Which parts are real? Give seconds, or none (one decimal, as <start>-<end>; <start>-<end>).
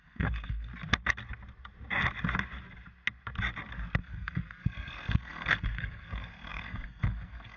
0.7-4.0